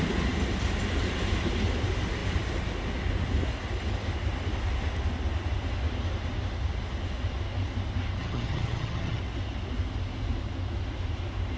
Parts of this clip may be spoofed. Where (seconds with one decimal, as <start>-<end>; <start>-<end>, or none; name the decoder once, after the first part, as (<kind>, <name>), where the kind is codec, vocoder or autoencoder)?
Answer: 8.2-9.2 (vocoder, HiFi-GAN)